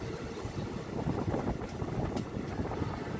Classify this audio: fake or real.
real